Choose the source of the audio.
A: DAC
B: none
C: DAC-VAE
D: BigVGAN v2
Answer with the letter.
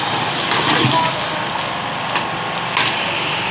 B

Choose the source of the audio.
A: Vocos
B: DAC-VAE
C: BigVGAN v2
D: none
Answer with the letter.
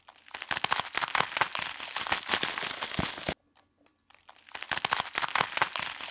D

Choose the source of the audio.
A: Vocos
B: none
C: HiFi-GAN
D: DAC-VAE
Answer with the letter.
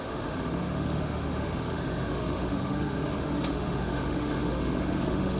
D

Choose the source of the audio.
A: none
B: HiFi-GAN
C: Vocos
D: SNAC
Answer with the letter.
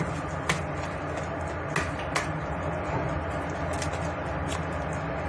A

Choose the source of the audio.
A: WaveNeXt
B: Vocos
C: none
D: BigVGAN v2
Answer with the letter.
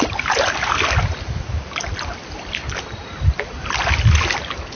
C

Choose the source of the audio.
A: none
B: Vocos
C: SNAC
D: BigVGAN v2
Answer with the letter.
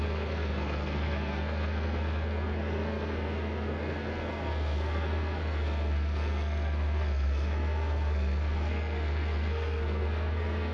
C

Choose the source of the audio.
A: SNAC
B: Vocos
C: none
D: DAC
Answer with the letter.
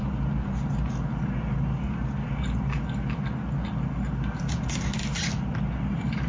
C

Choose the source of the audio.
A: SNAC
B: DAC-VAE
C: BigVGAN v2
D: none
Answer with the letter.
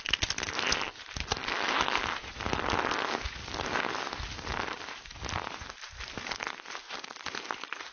D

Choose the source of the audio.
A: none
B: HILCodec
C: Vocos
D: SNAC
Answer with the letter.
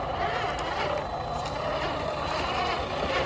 A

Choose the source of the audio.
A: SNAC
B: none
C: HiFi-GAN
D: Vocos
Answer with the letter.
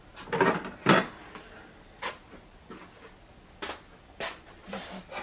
B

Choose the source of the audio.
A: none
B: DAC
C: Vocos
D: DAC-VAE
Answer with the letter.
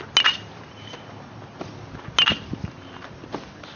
A